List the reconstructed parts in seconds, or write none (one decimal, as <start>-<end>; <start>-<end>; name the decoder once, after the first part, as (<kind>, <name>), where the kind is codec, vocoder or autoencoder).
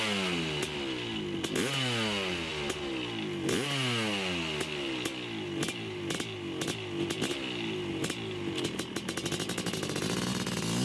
none